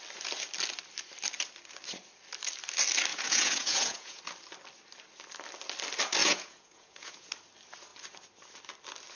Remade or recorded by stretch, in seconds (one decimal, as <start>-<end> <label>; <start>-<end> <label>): 0.0-3.1 recorded; 3.1-4.2 remade; 4.2-6.2 recorded; 6.2-7.3 remade; 7.3-9.2 recorded